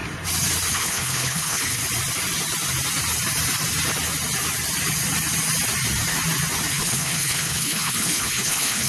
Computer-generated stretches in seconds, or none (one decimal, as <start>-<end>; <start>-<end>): 0.7-1.8; 6.7-8.9